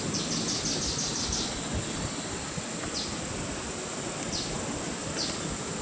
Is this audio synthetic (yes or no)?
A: no